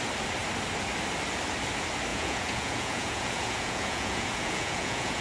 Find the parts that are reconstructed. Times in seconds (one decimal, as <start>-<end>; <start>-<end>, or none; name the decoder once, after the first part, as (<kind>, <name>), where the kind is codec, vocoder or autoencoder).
2.1-5.2 (vocoder, Vocos)